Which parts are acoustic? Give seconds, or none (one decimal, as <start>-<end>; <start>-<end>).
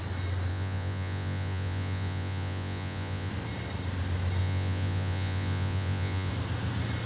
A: 0.0-0.5; 3.3-4.4; 6.3-7.1